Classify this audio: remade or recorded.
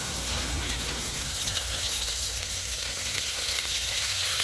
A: remade